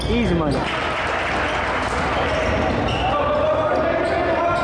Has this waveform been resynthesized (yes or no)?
no